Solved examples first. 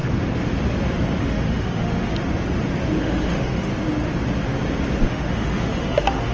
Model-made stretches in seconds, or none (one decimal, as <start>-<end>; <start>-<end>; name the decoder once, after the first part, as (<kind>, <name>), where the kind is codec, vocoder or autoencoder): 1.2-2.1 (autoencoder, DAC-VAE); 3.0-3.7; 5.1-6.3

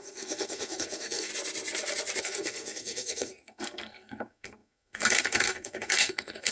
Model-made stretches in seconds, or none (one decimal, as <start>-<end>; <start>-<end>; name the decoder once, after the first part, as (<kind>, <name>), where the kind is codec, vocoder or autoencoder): 0.0-1.3 (codec, SNAC); 2.2-6.5

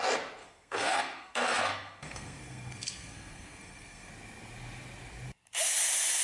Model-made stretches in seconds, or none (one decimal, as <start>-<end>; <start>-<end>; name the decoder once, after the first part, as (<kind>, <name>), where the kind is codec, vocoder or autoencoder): 0.4-4.1 (codec, SNAC)

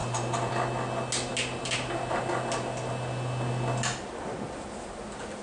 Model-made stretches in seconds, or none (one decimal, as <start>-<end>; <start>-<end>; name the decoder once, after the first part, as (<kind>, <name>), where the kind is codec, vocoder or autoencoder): 0.0-0.5 (vocoder, BigVGAN v2)